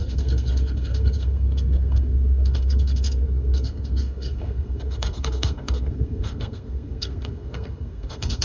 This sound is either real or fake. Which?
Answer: fake